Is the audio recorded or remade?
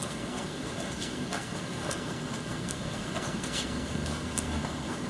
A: remade